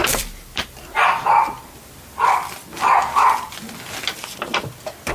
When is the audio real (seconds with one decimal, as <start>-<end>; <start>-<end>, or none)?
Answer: 1.3-5.1